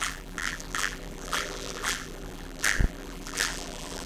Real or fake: fake